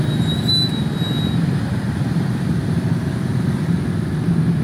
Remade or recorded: recorded